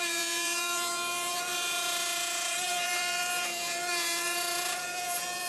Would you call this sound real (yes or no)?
no